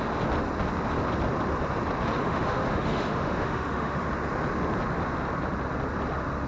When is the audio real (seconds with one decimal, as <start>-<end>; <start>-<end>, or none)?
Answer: 0.0-2.2; 4.1-6.5